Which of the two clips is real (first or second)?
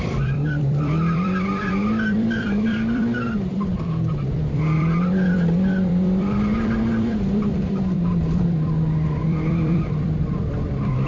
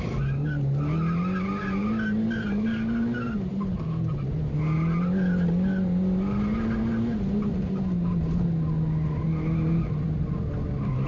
second